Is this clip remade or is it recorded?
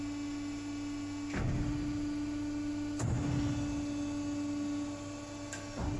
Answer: recorded